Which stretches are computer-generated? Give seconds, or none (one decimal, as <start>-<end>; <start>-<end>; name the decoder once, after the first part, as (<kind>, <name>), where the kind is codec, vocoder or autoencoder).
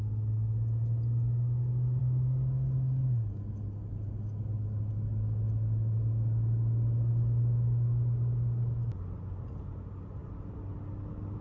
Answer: none